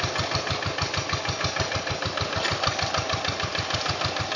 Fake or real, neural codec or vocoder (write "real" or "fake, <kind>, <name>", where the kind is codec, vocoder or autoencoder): real